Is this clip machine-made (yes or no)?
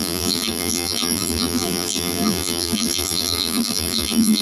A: yes